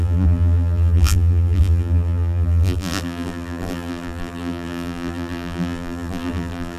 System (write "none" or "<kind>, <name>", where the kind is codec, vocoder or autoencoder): vocoder, BigVGAN v2